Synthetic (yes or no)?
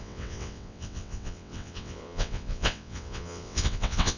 yes